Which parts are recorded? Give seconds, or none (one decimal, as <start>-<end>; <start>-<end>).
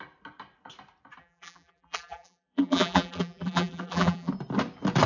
0.0-1.2; 4.3-5.1